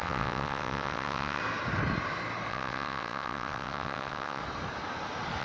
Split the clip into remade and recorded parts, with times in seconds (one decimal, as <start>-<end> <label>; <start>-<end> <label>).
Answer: 0.0-1.4 remade; 1.4-2.5 recorded; 2.5-4.4 remade; 4.4-5.4 recorded